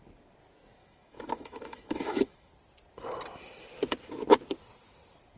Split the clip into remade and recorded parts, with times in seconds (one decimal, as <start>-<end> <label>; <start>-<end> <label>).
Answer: 0.0-0.8 recorded; 0.8-2.5 remade; 2.5-5.4 recorded